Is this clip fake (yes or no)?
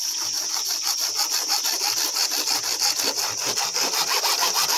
no